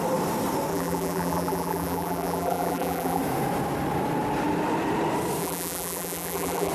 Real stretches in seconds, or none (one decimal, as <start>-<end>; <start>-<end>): 0.0-0.7; 3.2-5.4